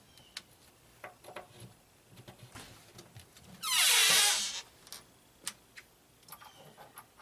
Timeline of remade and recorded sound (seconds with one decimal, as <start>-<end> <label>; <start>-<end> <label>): 0.0-7.2 recorded